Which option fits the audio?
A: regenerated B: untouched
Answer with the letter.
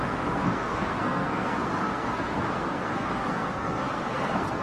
A